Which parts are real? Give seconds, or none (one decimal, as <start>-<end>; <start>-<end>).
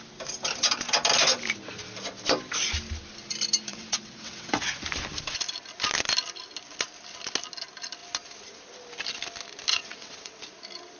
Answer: 0.0-3.7; 4.8-9.7; 10.4-11.0